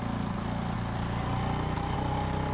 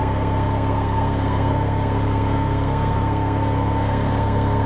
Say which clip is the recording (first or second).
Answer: first